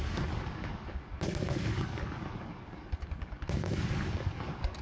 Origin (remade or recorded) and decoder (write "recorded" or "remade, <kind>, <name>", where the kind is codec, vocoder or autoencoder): remade, codec, DAC